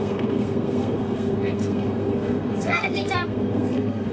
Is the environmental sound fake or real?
fake